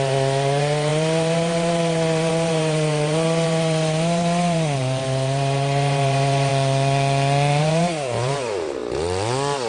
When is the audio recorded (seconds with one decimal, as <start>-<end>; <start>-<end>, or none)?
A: 6.5-7.6; 8.8-9.7